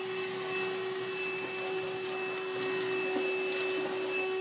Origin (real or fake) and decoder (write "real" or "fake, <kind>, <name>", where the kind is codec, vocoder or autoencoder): real